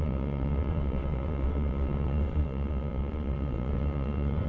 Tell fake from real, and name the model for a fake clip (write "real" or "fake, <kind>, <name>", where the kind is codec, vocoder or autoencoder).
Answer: fake, vocoder, WaveNeXt